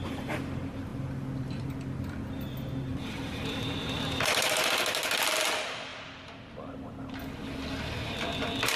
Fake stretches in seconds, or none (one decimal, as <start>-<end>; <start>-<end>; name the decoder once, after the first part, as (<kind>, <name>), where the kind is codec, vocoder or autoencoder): 0.9-1.7 (vocoder, BigVGAN v2); 2.9-4.7